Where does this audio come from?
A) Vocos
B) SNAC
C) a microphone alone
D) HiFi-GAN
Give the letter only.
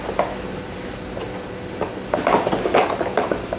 C